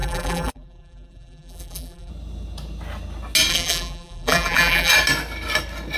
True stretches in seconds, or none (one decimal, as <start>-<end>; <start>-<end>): 2.1-3.5; 4.9-6.0